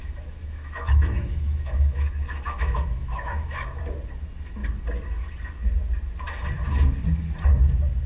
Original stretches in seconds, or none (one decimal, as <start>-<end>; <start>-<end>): 3.8-8.1